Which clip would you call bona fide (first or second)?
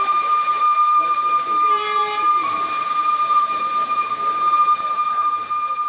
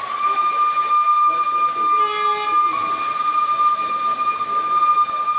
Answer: second